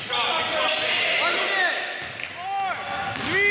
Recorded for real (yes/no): yes